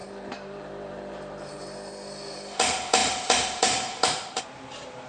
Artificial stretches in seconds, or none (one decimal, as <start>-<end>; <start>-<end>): 0.0-1.9; 3.0-4.4